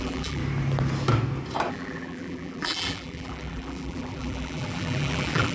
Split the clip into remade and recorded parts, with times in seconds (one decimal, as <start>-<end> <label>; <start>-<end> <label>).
0.0-0.4 remade; 0.4-1.7 recorded; 1.7-5.5 remade